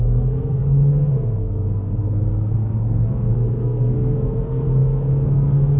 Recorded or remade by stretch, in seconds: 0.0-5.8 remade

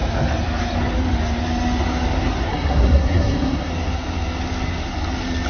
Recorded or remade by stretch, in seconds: 0.0-2.5 recorded; 2.5-3.7 remade; 3.7-5.5 recorded

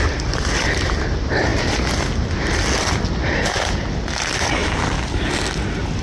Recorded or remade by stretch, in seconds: 0.0-6.0 recorded

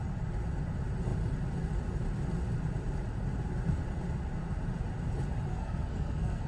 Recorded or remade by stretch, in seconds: 0.0-5.5 recorded; 5.5-6.5 remade

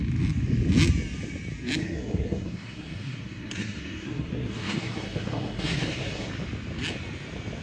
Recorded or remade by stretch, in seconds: 0.0-1.8 recorded; 1.8-6.3 remade; 6.3-7.6 recorded

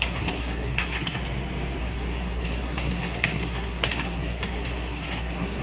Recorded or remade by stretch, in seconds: 0.0-1.2 remade; 1.2-1.8 recorded; 1.8-5.6 remade

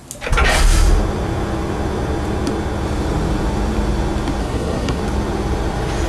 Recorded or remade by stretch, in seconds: 0.0-4.4 recorded; 4.4-5.0 remade; 5.0-6.1 recorded

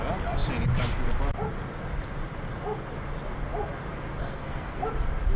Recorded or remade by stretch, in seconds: 0.0-4.2 recorded; 4.2-4.8 remade; 4.8-5.4 recorded